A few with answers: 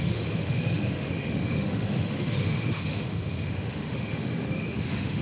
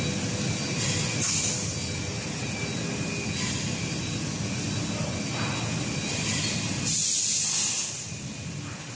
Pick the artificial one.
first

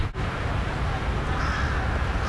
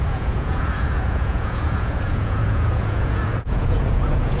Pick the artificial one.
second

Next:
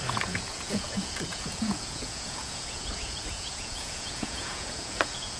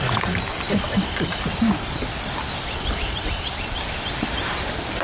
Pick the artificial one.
first